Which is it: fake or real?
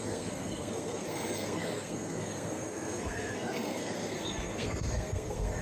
fake